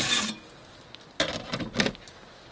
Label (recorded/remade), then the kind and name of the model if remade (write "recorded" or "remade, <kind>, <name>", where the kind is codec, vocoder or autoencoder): recorded